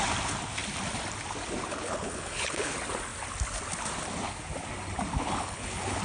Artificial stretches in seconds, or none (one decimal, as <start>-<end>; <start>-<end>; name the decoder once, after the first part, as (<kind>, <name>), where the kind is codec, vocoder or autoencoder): 1.7-2.7 (codec, HILCodec); 5.1-6.0